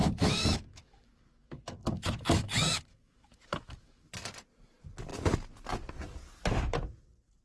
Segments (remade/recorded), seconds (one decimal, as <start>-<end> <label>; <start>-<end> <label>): 0.0-4.1 remade; 4.1-7.4 recorded